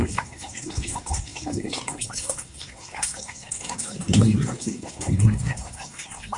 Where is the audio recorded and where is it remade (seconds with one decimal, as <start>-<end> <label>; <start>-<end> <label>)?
0.0-6.4 remade